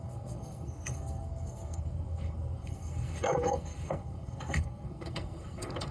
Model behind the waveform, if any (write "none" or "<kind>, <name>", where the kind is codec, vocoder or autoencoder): codec, SNAC